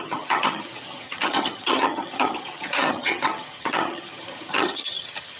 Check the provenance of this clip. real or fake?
fake